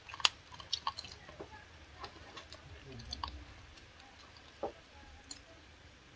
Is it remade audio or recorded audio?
recorded